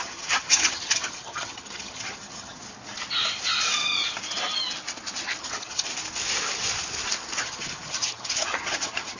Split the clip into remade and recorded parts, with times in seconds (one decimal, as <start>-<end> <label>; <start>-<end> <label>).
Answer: 0.0-2.6 remade; 2.6-5.4 recorded; 5.4-5.9 remade; 5.9-7.4 recorded; 7.4-9.2 remade